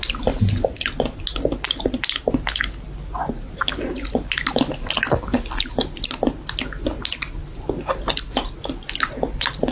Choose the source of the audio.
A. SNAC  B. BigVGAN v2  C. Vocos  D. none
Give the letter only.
D